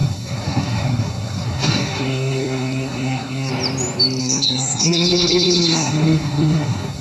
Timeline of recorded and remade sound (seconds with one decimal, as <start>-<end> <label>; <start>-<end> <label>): 0.0-3.5 remade; 3.5-4.2 recorded; 4.2-7.0 remade